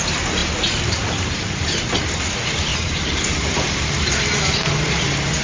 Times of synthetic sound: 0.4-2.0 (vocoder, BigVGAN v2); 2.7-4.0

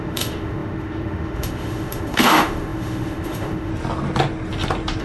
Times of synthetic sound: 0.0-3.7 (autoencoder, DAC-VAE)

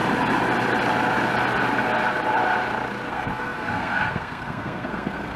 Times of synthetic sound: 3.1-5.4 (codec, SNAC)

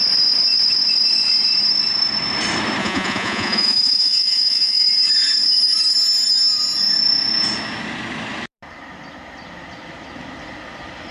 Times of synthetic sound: 2.8-4.9 (vocoder, Vocos)

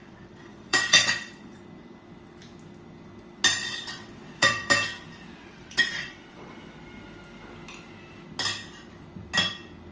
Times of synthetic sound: 0.0-1.6 (vocoder, WaveNeXt); 3.6-4.7; 5.5-6.5